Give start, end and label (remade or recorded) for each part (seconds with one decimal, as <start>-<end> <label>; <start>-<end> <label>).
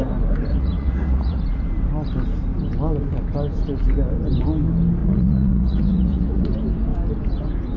0.0-0.5 recorded; 0.5-1.4 remade; 1.4-5.0 recorded; 5.0-6.5 remade; 6.5-7.8 recorded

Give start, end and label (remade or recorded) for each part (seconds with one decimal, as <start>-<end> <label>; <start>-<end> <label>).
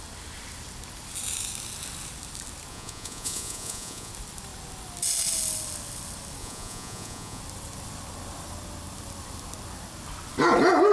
0.0-2.7 recorded; 2.7-4.1 remade; 4.1-6.4 recorded; 6.4-7.4 remade; 7.4-10.9 recorded